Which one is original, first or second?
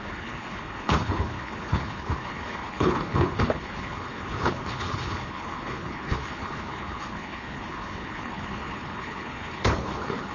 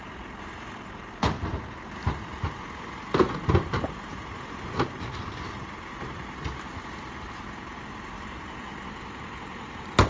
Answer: second